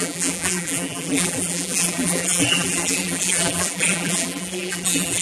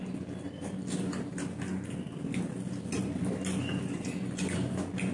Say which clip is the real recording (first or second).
second